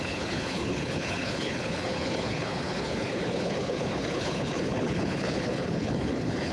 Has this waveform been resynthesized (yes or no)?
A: yes